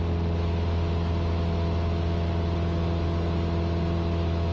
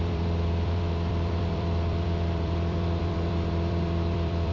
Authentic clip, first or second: first